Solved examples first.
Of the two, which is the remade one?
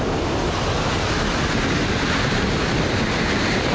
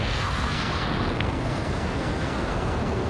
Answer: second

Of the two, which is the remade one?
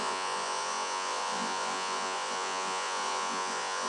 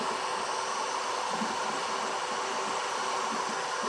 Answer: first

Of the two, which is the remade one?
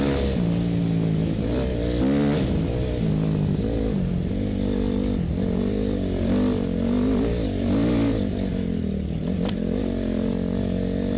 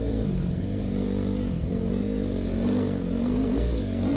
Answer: second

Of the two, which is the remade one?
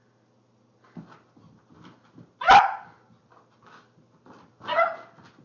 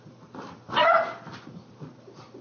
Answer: second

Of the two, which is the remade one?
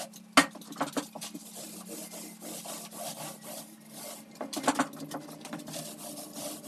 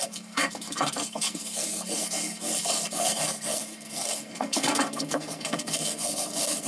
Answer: second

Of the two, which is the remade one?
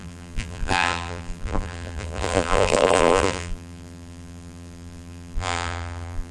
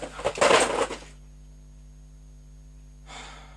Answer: first